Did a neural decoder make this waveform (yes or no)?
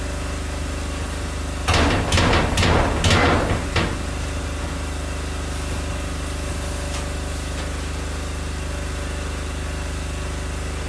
no